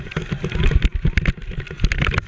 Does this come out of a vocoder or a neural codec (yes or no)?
no